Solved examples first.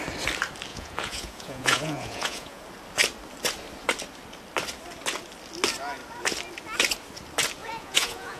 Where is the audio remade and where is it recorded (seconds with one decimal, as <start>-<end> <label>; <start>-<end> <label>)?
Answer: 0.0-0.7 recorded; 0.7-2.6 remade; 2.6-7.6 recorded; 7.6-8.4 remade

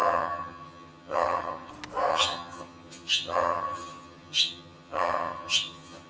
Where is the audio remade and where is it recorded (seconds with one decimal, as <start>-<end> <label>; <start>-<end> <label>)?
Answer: 0.0-1.7 remade; 1.7-2.1 recorded; 2.1-6.1 remade

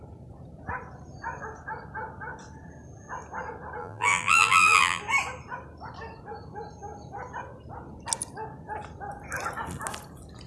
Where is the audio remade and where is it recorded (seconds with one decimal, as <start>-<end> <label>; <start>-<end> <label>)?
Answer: 0.0-3.8 recorded; 3.8-5.0 remade; 5.0-10.5 recorded